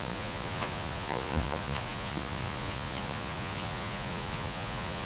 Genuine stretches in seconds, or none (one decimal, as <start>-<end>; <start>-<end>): none